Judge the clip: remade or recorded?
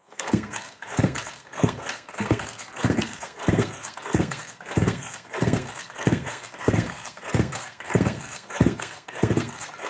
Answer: remade